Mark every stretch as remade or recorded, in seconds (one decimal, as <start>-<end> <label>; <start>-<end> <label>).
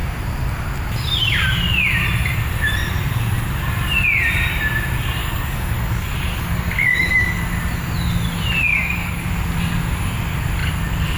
0.0-5.2 recorded; 5.2-7.3 remade; 7.3-8.7 recorded; 8.7-9.3 remade; 9.3-11.2 recorded